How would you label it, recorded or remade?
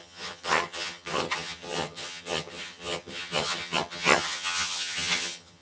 remade